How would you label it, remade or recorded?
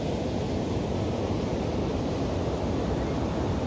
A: recorded